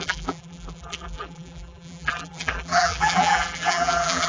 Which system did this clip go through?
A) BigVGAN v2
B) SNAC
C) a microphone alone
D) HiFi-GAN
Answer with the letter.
A